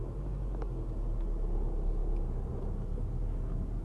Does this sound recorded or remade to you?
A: recorded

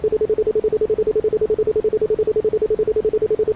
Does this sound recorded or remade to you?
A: recorded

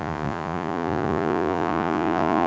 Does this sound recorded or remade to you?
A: remade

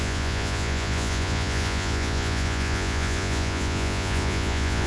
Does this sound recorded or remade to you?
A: remade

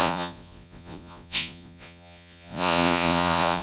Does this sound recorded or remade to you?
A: remade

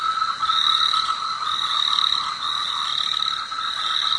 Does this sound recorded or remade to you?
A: recorded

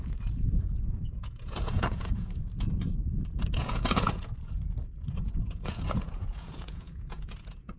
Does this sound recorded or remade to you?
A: remade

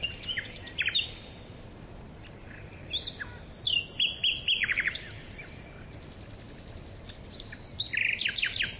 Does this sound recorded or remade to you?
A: recorded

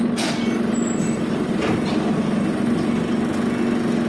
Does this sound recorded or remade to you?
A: recorded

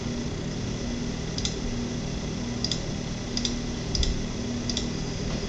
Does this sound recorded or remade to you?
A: recorded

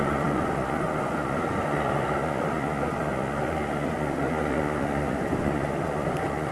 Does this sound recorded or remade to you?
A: remade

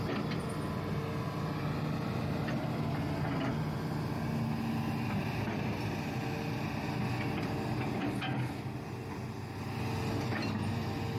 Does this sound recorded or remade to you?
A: recorded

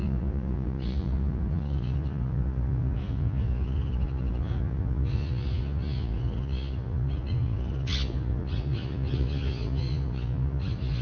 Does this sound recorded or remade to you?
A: remade